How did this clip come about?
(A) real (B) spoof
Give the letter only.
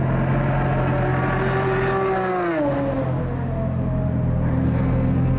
A